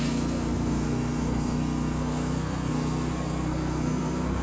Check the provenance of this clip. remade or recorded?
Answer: remade